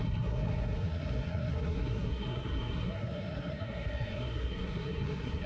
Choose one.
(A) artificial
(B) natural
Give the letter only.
A